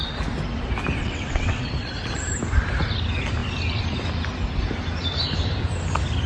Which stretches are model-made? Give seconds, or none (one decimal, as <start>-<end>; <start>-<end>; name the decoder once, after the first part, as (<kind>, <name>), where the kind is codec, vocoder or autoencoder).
1.0-1.7 (vocoder, WaveNeXt)